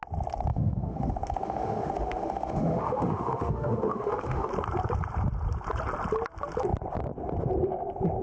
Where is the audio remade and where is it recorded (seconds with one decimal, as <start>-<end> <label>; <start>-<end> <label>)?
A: 0.0-0.5 recorded; 0.5-4.5 remade; 4.5-8.2 recorded